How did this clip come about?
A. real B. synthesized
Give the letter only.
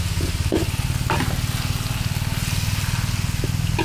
A